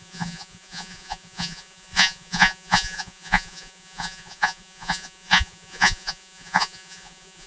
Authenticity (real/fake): fake